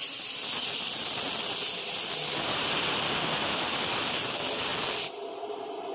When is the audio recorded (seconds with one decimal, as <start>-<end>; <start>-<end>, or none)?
0.0-5.9